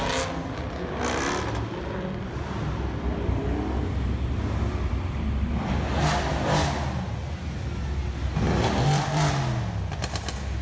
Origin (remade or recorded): recorded